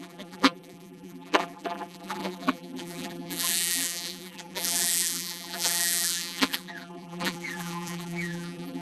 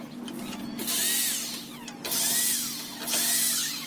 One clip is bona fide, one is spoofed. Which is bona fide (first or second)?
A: second